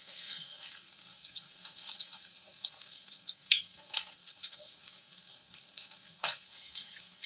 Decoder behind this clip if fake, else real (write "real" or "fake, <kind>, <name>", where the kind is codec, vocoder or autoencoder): fake, codec, SNAC